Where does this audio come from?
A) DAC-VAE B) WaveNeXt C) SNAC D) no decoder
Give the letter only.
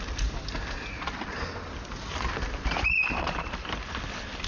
D